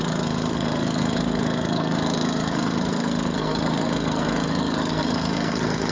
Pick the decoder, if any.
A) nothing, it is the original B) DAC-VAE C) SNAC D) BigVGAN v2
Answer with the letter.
C